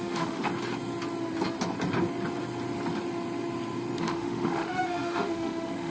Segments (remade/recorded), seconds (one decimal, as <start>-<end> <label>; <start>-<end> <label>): 0.0-0.5 remade; 0.5-4.0 recorded; 4.0-5.9 remade